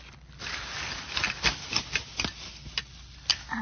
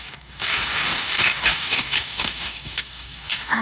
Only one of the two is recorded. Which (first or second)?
first